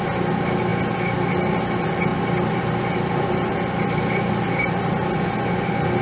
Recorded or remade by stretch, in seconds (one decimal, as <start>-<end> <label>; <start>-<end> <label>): 0.0-6.0 recorded